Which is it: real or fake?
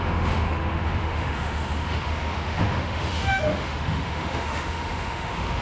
fake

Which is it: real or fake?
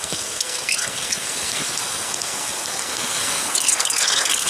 fake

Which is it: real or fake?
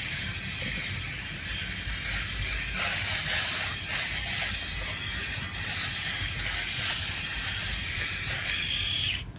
real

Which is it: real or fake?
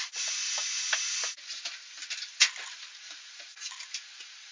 real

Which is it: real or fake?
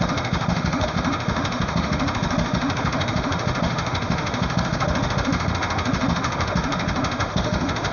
fake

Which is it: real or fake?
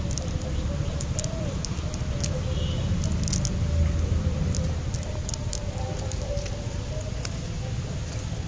real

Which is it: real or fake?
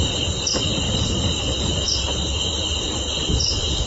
real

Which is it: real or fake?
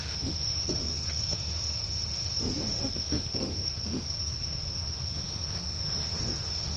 fake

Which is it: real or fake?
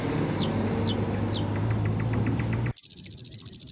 real